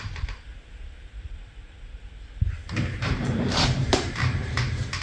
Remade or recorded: remade